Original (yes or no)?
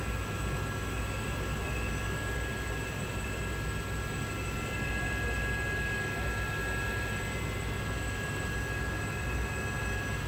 yes